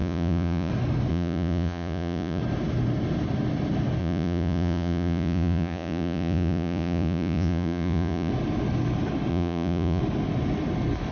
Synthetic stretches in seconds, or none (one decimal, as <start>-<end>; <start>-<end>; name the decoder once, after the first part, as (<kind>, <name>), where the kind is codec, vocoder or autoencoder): 0.0-0.7 (vocoder, Vocos); 1.1-2.4; 4.0-8.3; 9.3-10.0